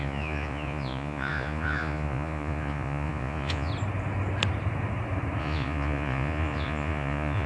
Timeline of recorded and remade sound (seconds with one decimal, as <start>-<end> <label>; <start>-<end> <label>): 0.0-3.7 remade; 3.7-5.4 recorded; 5.4-7.5 remade